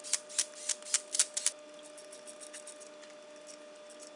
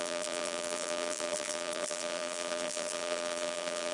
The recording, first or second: first